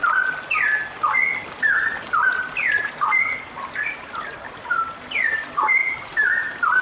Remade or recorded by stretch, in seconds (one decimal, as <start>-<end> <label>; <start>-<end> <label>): 0.0-5.8 recorded; 5.8-6.8 remade